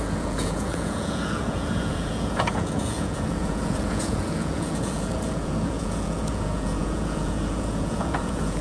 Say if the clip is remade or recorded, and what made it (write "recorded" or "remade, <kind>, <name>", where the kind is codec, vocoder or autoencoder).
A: remade, vocoder, Vocos